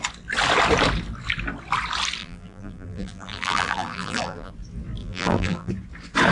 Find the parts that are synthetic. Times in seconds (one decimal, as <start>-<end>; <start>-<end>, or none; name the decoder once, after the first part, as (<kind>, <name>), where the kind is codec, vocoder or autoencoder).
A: 2.2-4.5 (vocoder, BigVGAN v2); 5.0-5.7